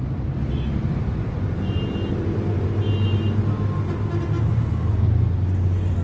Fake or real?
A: real